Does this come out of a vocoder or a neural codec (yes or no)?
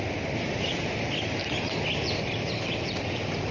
no